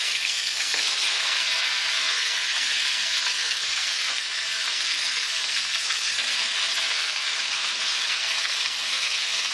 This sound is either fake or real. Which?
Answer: fake